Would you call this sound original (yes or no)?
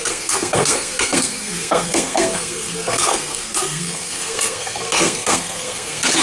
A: no